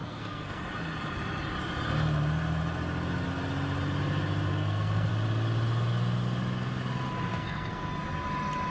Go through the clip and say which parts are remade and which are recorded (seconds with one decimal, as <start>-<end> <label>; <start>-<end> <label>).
0.0-0.6 remade; 0.6-4.5 recorded; 4.5-5.1 remade; 5.1-7.3 recorded; 7.3-7.9 remade; 7.9-8.7 recorded